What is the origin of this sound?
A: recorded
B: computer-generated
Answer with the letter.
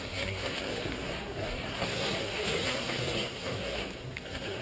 B